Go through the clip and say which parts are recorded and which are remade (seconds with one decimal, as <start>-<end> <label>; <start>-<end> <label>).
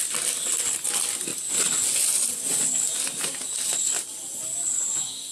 0.0-5.3 recorded